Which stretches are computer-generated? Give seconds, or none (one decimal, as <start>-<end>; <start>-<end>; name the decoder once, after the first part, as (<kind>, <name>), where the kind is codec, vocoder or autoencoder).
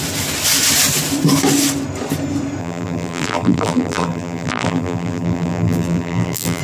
2.6-6.6 (vocoder, BigVGAN v2)